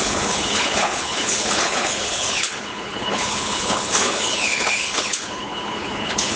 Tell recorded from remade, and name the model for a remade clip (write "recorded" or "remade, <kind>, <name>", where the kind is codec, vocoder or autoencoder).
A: remade, codec, HILCodec